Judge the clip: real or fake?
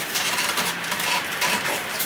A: fake